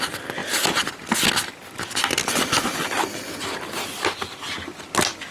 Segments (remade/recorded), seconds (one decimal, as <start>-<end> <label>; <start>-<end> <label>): 0.0-5.3 recorded